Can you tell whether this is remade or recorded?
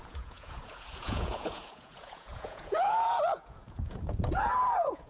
remade